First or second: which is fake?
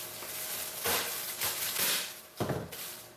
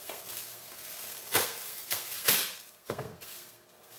second